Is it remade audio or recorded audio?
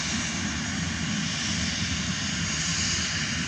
recorded